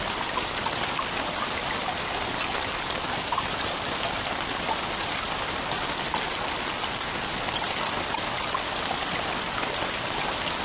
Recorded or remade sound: recorded